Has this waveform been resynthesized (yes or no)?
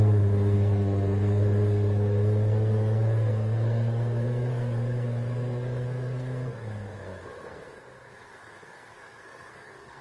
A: yes